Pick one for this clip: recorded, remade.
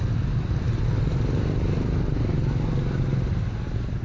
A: recorded